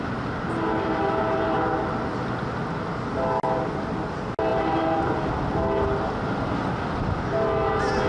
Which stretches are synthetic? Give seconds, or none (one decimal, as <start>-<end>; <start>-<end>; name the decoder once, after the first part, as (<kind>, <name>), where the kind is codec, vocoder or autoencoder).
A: 4.5-5.3 (vocoder, BigVGAN v2)